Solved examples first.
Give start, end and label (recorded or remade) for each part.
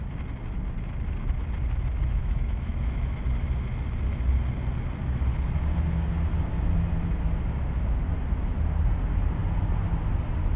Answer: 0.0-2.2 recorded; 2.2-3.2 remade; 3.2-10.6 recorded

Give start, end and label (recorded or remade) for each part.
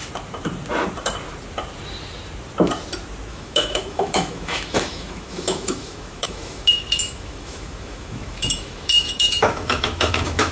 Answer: 0.0-3.3 recorded; 3.3-10.5 remade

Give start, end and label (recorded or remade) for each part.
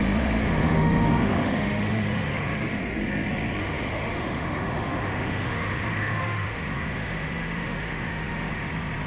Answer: 0.0-0.4 recorded; 0.4-3.0 remade; 3.0-3.6 recorded; 3.6-8.7 remade; 8.7-9.1 recorded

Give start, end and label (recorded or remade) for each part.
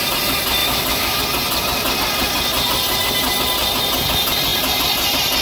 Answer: 0.0-0.6 recorded; 0.6-1.2 remade; 1.2-5.4 recorded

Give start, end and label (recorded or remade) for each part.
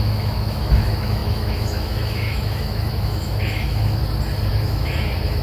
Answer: 0.0-4.0 remade; 4.0-4.5 recorded; 4.5-5.4 remade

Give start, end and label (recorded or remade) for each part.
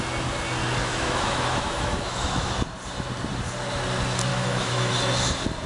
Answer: 0.0-0.8 recorded; 0.8-2.5 remade; 2.5-4.3 recorded; 4.3-4.9 remade; 4.9-5.7 recorded